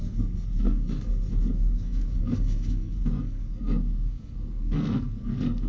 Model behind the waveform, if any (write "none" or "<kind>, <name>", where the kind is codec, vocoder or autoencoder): codec, SNAC